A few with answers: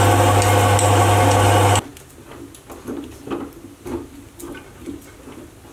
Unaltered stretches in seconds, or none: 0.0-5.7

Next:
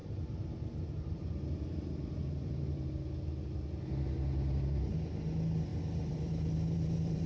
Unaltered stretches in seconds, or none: 2.9-5.7

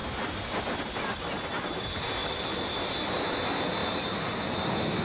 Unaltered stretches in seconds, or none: 0.9-2.2; 3.3-5.0

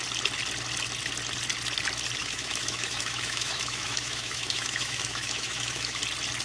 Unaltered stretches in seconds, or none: 0.0-2.2; 6.0-6.4

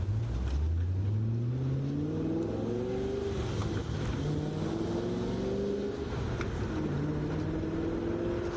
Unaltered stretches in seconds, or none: 0.0-8.6

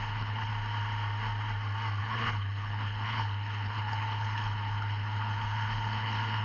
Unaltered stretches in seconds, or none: 0.5-2.0

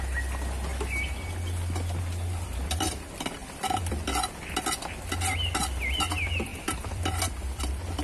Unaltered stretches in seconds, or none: 0.0-3.4; 4.0-6.5; 7.6-8.0